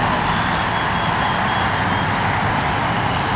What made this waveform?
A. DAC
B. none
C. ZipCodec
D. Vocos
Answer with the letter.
B